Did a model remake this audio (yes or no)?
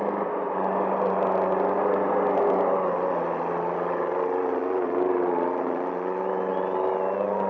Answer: no